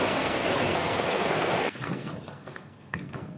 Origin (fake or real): fake